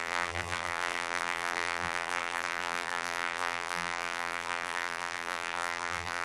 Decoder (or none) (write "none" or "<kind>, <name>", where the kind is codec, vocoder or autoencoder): vocoder, BigVGAN v2